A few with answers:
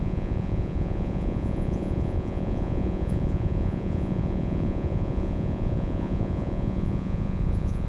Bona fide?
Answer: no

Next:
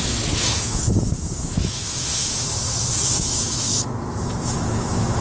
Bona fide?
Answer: no